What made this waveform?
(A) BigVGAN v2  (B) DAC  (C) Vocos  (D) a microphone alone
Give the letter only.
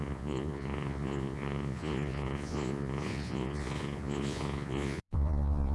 C